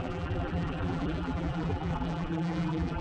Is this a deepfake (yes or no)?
yes